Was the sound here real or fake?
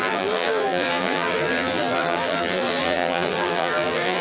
fake